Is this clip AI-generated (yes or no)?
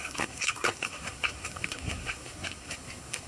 yes